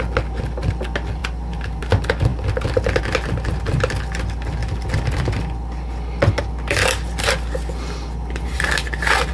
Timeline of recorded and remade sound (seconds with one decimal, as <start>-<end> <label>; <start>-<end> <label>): 0.0-1.2 recorded; 1.2-1.8 remade; 1.8-2.3 recorded; 2.3-3.0 remade; 3.0-4.6 recorded; 4.6-6.4 remade; 6.4-9.3 recorded